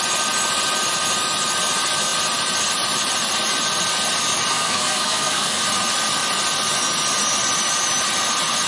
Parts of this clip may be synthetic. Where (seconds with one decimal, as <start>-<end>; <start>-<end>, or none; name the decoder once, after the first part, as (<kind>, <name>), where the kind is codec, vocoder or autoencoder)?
4.5-5.6 (codec, SNAC)